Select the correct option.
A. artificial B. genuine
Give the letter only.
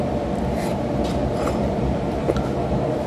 A